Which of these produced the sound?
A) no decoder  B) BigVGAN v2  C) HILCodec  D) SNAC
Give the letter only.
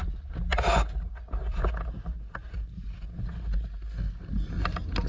A